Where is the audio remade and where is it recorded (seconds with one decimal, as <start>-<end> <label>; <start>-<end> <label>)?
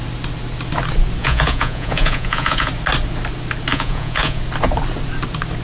0.0-1.2 recorded; 1.2-2.7 remade; 2.7-3.7 recorded; 3.7-4.4 remade; 4.4-5.6 recorded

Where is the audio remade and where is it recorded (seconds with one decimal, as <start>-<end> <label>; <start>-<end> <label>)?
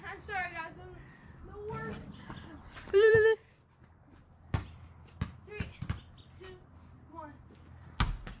0.0-8.4 recorded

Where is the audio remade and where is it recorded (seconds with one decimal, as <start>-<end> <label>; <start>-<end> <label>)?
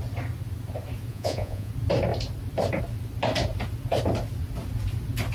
0.0-1.1 recorded; 1.1-1.7 remade; 1.7-5.3 recorded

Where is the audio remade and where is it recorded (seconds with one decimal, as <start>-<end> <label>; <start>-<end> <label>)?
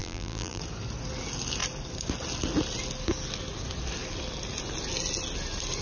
0.0-0.6 remade; 0.6-5.8 recorded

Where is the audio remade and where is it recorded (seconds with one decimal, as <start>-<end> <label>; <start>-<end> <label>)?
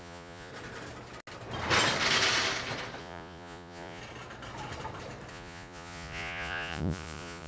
0.0-0.5 remade; 0.5-3.0 recorded; 3.0-4.0 remade; 4.0-5.3 recorded; 5.3-7.5 remade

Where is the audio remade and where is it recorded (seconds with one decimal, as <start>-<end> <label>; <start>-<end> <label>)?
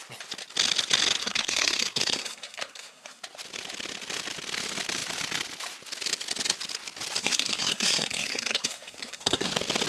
0.0-1.2 recorded; 1.2-3.2 remade; 3.2-7.2 recorded; 7.2-9.5 remade; 9.5-9.9 recorded